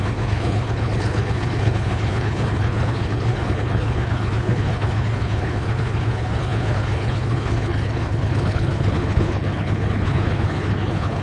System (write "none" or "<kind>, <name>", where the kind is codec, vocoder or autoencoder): codec, HILCodec